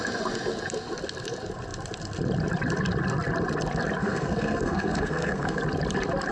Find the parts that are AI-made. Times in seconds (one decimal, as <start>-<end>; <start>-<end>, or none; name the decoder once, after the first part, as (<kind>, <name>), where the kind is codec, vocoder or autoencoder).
4.0-5.6 (codec, SNAC)